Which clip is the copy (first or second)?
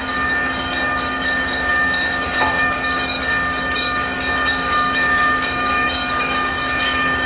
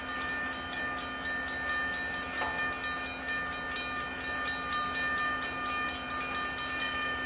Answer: first